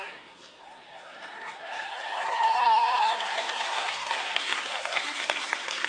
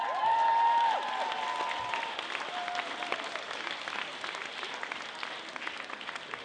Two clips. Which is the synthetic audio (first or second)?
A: first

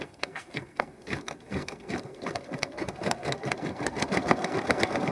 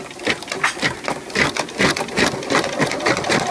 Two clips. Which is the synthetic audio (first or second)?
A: first